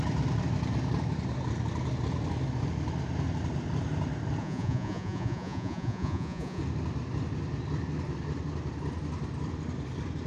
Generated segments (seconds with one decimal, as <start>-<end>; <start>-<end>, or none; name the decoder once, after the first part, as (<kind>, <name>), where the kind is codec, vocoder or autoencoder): 4.4-6.6 (vocoder, Vocos)